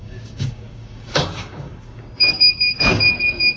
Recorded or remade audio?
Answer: remade